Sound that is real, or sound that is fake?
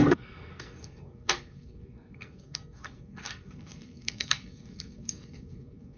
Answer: fake